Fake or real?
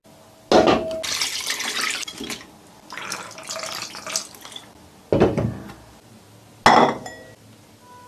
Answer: real